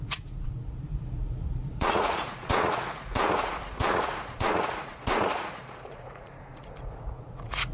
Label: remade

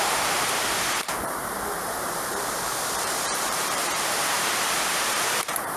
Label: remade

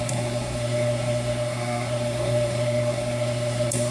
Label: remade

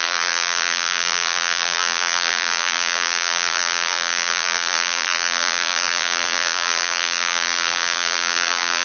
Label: remade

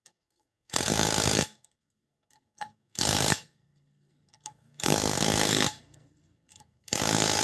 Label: remade